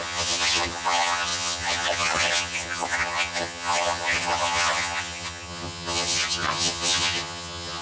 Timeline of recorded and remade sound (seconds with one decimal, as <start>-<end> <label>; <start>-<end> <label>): 0.0-7.8 remade